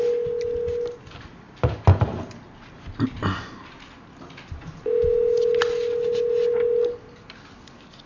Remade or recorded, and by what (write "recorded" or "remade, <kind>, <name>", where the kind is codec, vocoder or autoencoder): recorded